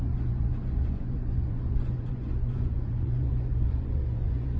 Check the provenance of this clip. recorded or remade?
remade